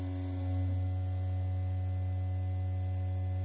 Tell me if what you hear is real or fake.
real